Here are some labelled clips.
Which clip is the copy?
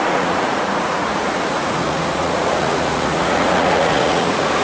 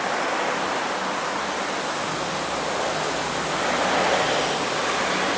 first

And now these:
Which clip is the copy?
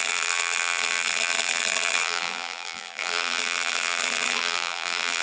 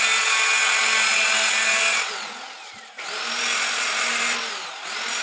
first